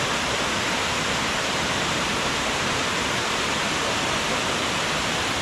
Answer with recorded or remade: remade